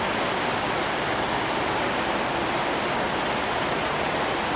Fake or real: real